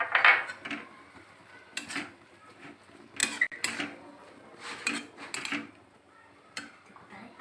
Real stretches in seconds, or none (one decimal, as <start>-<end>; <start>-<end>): 0.0-7.4